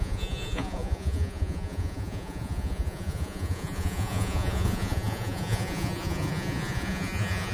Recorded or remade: remade